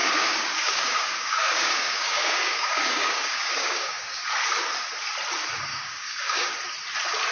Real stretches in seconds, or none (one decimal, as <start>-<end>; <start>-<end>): 4.2-5.7; 6.5-7.3